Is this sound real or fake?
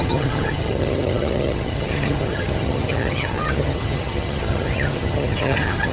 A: fake